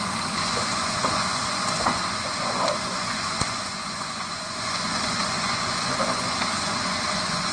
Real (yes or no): no